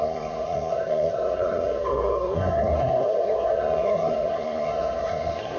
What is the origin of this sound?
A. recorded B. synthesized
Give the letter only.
B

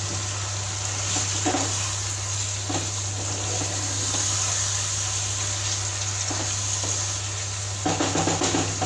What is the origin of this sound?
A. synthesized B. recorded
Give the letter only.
B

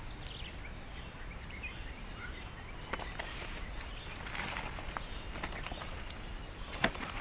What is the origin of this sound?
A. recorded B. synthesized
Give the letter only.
A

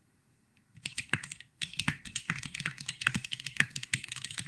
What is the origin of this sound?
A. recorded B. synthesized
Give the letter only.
B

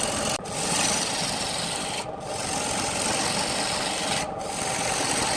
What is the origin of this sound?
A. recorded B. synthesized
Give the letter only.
A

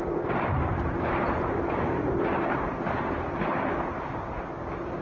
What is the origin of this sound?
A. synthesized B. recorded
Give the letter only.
B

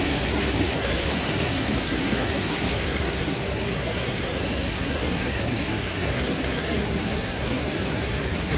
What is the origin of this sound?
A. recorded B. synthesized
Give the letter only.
B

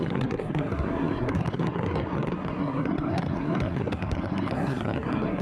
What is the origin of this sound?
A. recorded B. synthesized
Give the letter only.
B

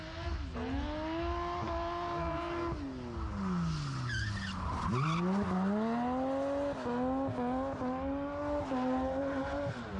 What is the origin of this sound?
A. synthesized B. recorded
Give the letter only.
B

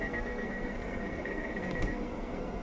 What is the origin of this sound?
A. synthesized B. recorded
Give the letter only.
A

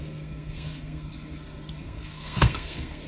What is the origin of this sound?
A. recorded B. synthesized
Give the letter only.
B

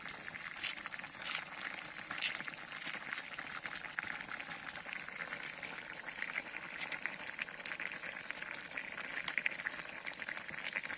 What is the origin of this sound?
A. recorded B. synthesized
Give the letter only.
A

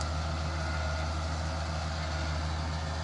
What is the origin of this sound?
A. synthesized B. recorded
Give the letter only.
B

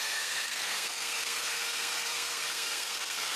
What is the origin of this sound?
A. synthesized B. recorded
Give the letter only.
A